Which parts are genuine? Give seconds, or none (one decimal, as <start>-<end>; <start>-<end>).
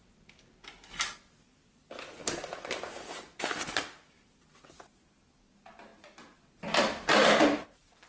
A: 0.0-2.2; 3.6-8.1